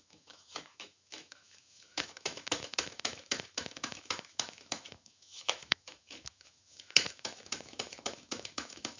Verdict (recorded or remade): remade